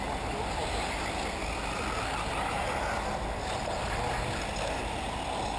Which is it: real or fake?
real